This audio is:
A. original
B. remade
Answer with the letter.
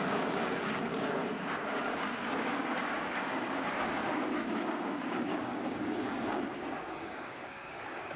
B